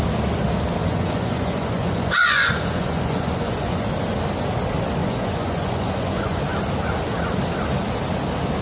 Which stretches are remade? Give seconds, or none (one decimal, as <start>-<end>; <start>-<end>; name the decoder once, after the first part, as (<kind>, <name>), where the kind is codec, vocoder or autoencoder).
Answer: 0.8-3.9 (vocoder, Vocos); 5.0-6.4